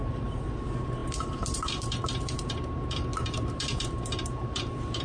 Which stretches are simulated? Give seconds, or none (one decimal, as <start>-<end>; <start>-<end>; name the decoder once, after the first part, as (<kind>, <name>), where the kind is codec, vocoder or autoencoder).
0.0-5.0 (vocoder, BigVGAN v2)

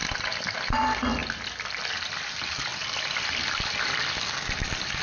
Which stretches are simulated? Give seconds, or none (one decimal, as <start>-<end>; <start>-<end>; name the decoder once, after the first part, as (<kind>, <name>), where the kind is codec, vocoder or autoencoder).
1.2-1.8 (vocoder, BigVGAN v2); 2.7-4.0

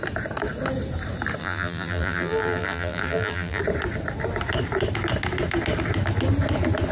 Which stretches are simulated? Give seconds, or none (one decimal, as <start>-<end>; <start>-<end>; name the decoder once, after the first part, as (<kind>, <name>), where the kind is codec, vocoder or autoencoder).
1.4-3.6 (vocoder, BigVGAN v2)